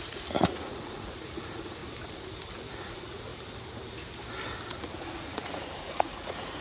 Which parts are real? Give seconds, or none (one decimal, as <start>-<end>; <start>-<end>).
1.8-2.7; 3.3-4.9